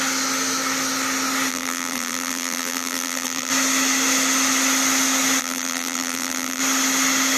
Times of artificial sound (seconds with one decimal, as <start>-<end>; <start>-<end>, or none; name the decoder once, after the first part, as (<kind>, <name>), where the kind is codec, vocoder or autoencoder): 1.5-3.5 (vocoder, BigVGAN v2); 5.4-6.6